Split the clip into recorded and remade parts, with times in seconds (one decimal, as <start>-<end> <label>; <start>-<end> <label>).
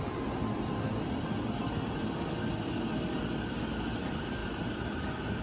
0.0-5.4 recorded